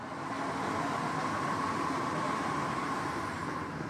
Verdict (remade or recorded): recorded